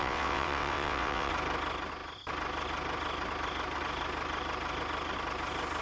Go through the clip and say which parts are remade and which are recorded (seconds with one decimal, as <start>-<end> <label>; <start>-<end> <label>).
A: 0.0-1.3 remade; 1.3-5.8 recorded